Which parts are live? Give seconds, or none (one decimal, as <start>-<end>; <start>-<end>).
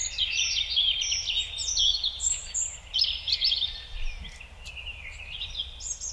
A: 0.0-6.1